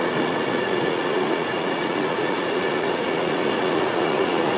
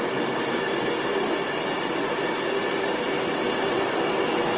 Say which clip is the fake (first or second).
first